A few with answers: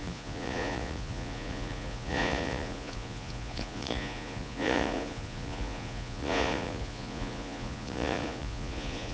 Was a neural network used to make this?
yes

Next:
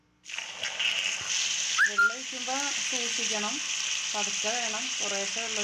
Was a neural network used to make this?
no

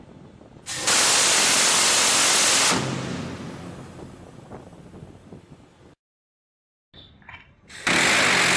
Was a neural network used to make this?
no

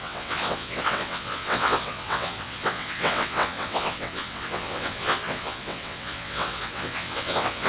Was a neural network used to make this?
yes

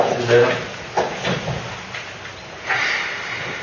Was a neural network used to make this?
no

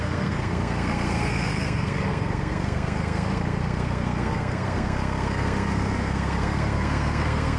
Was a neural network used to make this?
yes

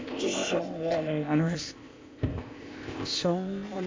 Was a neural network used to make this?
yes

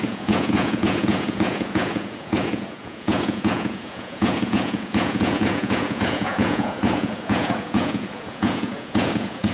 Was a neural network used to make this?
yes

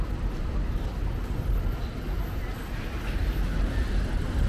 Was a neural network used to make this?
no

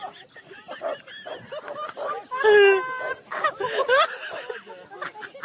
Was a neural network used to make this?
no